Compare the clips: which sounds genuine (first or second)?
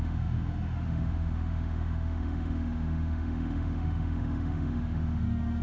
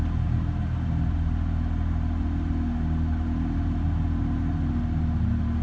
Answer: second